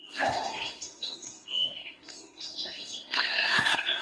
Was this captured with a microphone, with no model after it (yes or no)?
no